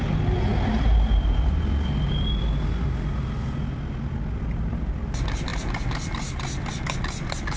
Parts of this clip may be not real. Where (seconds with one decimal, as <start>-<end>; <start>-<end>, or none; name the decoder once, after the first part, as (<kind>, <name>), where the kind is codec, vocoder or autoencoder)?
none

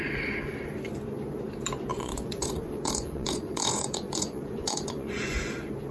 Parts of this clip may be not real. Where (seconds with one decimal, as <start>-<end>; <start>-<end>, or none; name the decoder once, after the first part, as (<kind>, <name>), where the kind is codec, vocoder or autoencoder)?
1.9-5.4 (vocoder, Vocos)

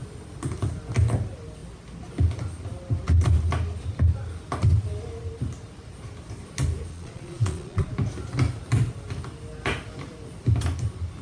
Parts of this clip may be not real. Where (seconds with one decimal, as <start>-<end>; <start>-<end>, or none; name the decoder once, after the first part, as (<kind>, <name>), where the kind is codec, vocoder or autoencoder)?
6.9-7.9 (vocoder, Vocos)

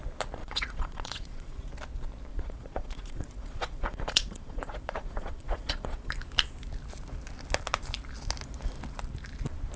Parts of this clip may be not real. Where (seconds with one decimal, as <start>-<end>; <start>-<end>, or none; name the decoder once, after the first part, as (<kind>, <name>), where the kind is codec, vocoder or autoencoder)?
0.4-1.7 (vocoder, Vocos); 2.3-6.1

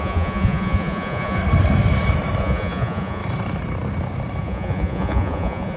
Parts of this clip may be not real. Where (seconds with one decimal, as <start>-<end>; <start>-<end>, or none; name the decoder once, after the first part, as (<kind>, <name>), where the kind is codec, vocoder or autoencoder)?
0.0-1.4 (vocoder, Vocos); 2.4-3.2; 4.4-5.8